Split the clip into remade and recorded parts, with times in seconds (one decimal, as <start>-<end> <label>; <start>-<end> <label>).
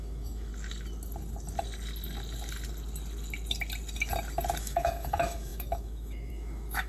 0.0-0.5 remade; 0.5-4.6 recorded; 4.6-6.9 remade